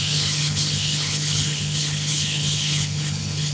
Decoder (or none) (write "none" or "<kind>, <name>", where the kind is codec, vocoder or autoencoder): codec, HILCodec